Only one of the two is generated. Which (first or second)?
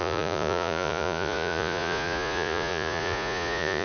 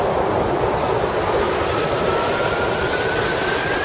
first